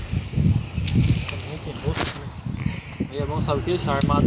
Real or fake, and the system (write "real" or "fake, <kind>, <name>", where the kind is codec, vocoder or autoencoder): real